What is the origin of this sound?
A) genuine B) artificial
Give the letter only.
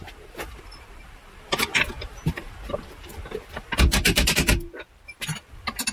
B